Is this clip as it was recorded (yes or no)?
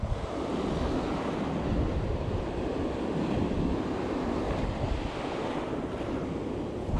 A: yes